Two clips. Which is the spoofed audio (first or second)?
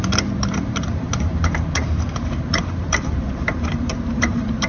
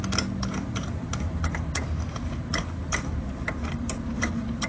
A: first